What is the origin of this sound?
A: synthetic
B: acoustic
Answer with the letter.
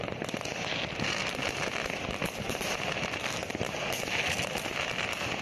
B